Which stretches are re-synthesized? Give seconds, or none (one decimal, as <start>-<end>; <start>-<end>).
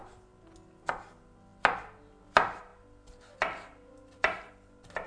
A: none